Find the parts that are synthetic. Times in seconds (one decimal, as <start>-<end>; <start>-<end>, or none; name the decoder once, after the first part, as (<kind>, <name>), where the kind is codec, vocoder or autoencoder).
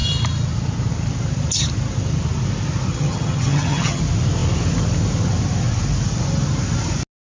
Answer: 2.9-4.0 (vocoder, HiFi-GAN)